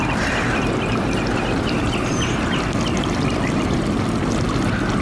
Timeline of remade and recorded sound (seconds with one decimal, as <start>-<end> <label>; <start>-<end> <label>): 0.0-0.9 recorded; 0.9-2.6 remade; 2.6-5.0 recorded